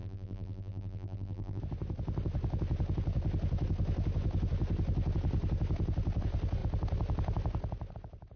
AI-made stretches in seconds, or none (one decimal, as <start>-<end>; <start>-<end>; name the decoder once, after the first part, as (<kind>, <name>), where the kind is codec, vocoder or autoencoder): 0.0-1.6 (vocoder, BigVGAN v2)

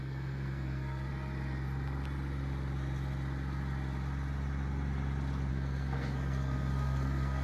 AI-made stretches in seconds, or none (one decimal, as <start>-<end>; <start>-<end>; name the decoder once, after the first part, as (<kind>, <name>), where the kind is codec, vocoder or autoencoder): 0.0-1.1 (codec, SNAC); 5.5-7.4

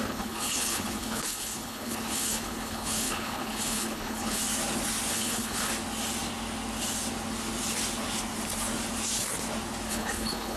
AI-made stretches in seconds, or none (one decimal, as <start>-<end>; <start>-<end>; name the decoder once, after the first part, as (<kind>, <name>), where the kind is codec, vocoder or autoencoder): 0.0-4.4 (codec, HILCodec); 5.1-5.7; 9.9-10.6

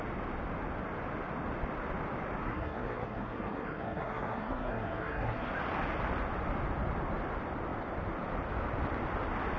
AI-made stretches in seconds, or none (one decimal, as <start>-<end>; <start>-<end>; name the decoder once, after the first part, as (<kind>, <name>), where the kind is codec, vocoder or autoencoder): 2.4-5.5 (codec, SNAC)